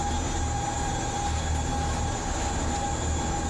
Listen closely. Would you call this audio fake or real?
real